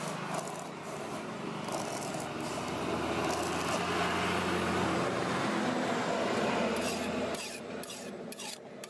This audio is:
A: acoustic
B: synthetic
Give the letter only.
A